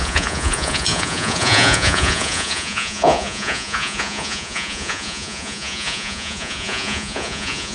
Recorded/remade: remade